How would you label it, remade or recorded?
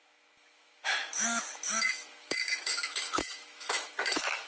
remade